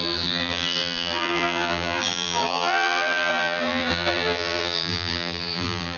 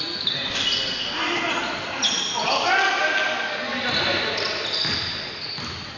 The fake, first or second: first